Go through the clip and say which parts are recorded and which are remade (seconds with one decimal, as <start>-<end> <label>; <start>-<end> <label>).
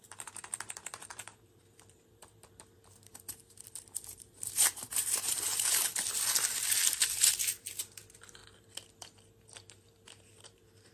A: 0.0-5.9 remade; 5.9-7.8 recorded; 7.8-8.4 remade; 8.4-9.4 recorded; 9.4-10.9 remade